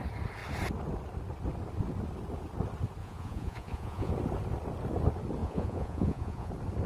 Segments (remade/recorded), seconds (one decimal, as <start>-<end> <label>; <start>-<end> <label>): 0.0-3.0 recorded; 3.0-4.1 remade; 4.1-5.4 recorded; 5.4-6.5 remade; 6.5-6.9 recorded